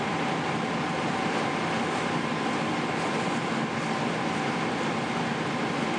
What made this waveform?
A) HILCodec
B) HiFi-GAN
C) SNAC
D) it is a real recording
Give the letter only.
D